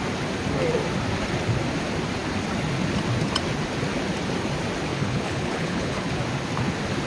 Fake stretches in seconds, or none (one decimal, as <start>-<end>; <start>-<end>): 4.9-6.2